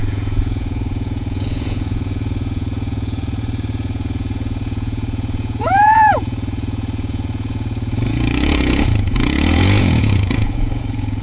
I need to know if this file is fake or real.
fake